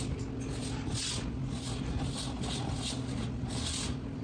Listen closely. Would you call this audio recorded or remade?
recorded